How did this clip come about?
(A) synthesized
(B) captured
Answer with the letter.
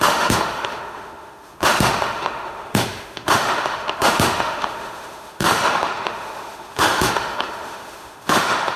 A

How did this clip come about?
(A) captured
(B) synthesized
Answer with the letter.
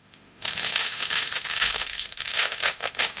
B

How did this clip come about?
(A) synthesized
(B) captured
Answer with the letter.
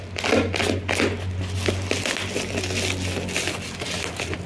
B